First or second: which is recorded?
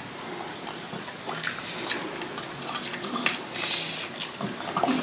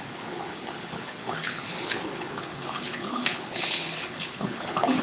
first